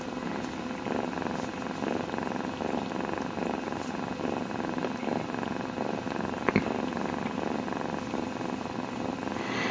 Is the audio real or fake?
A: real